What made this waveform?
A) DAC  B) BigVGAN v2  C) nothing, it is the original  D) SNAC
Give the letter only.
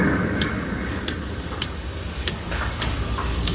A